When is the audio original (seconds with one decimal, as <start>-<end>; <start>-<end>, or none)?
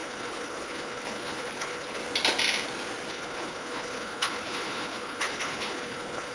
2.0-3.1